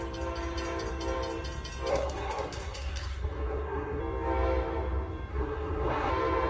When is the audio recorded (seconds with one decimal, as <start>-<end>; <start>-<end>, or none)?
0.0-1.9; 4.0-5.3; 6.1-6.5